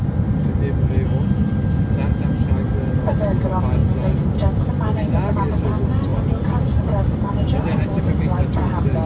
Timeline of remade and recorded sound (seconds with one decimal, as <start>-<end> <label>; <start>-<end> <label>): 0.0-6.1 recorded; 6.1-8.0 remade; 8.0-9.1 recorded